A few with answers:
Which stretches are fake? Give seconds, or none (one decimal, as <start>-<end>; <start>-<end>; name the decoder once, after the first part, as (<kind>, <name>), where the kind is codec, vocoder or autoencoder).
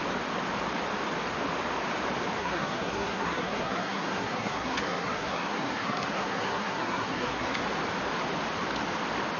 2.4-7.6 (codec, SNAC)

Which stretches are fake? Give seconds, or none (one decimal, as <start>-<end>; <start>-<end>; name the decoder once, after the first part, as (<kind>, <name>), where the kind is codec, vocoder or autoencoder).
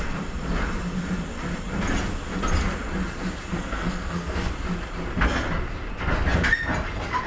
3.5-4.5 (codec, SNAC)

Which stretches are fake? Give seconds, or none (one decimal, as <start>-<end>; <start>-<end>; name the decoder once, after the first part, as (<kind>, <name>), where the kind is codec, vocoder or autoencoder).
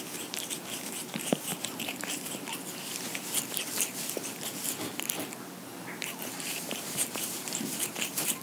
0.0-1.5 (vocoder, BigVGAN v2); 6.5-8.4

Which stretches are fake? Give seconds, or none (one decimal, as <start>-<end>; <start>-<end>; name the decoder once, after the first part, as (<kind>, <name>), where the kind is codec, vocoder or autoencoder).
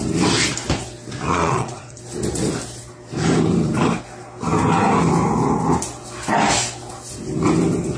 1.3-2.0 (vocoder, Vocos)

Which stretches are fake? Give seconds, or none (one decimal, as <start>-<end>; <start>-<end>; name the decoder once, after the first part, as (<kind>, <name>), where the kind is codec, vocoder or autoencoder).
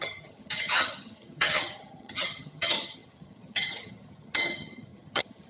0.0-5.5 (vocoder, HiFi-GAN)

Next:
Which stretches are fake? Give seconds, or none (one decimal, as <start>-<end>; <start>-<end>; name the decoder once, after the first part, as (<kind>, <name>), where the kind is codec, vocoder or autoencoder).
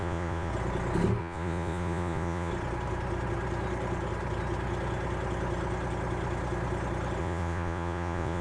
0.0-0.5 (vocoder, Vocos); 1.2-2.5; 7.2-8.4